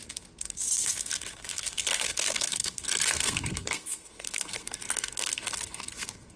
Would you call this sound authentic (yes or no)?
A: no